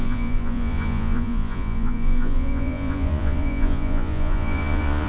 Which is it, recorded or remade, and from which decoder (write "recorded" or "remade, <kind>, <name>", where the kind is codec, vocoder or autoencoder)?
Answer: remade, vocoder, Vocos